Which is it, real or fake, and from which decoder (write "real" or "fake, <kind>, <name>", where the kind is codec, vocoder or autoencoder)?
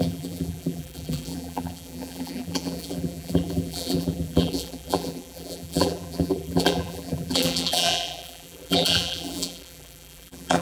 fake, vocoder, BigVGAN v2